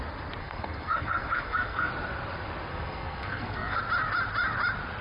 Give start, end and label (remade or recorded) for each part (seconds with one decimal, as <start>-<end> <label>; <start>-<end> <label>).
0.0-0.4 recorded; 0.4-1.9 remade; 1.9-2.7 recorded; 2.7-3.8 remade; 3.8-5.0 recorded